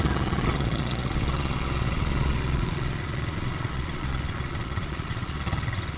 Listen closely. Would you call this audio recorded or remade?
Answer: remade